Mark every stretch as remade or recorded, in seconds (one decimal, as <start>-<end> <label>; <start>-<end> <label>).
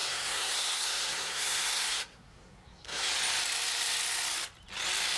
0.0-3.1 remade; 3.1-5.2 recorded